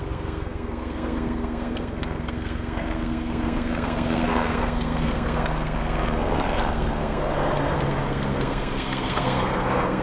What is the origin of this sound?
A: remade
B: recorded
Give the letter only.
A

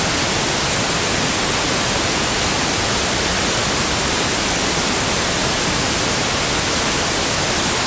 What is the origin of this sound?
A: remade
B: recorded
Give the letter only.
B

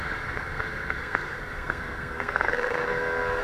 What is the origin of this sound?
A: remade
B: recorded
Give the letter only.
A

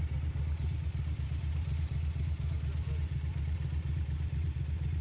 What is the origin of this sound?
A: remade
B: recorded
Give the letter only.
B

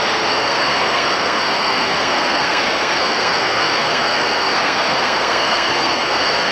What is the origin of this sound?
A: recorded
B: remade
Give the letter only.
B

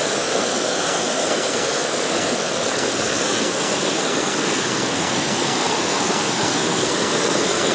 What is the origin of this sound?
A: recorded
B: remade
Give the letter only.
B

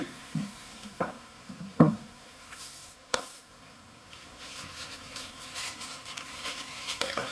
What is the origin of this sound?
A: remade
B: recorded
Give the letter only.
A